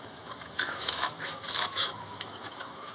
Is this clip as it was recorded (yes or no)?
no